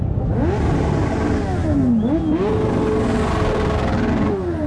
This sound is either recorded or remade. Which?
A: recorded